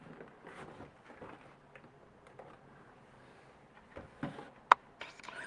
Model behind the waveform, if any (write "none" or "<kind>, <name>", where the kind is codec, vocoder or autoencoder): none